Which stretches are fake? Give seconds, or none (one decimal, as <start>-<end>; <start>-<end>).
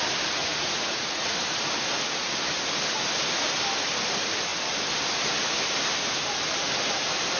0.4-1.4